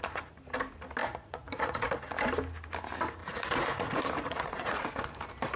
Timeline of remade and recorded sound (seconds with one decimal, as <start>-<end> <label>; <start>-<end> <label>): 0.0-1.0 recorded; 1.0-1.9 remade; 1.9-3.2 recorded; 3.2-4.9 remade; 4.9-5.6 recorded